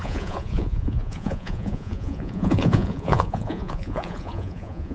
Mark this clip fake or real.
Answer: fake